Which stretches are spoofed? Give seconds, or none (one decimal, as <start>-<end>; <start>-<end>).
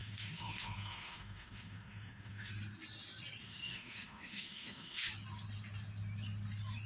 0.0-2.5; 3.4-5.1